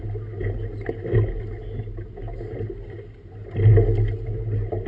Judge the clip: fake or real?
real